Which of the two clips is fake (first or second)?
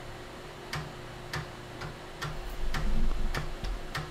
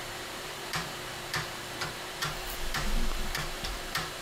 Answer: second